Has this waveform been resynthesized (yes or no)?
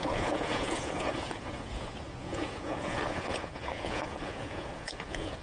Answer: yes